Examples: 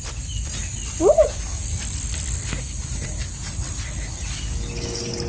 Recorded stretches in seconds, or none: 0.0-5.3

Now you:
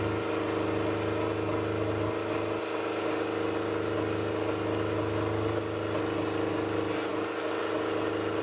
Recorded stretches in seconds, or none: 0.0-8.4

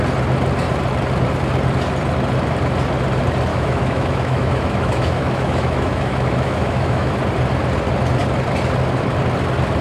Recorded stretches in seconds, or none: 0.0-3.5; 7.1-9.8

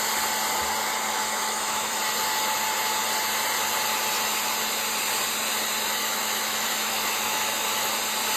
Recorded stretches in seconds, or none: 0.0-1.1; 2.0-6.0; 7.9-8.4

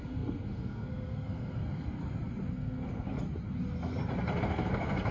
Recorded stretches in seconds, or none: 2.0-2.5; 3.1-4.4